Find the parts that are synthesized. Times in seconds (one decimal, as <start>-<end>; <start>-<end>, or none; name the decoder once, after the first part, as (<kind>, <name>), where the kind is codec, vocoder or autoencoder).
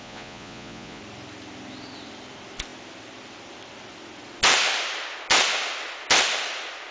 0.0-1.0 (vocoder, Vocos)